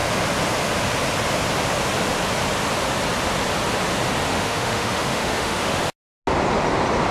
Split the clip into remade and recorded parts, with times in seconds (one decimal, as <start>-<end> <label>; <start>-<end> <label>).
0.0-4.3 recorded; 4.3-5.8 remade; 5.8-7.1 recorded